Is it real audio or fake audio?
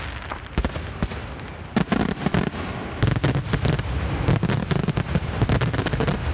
real